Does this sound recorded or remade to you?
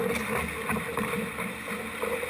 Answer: recorded